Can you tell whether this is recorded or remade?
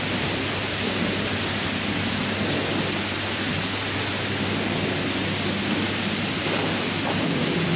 recorded